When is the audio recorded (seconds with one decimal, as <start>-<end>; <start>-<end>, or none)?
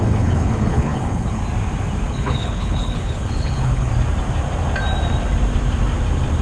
1.4-2.1; 3.9-6.4